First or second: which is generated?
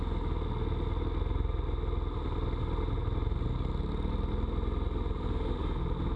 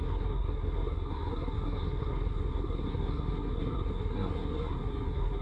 second